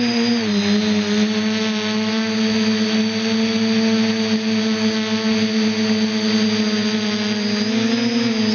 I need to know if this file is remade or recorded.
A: recorded